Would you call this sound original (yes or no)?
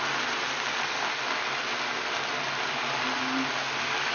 yes